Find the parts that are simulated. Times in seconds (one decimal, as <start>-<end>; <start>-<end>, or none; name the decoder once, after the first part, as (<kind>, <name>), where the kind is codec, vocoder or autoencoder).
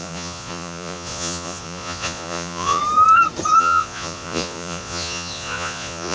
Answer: 0.0-2.8 (vocoder, Vocos); 3.6-6.1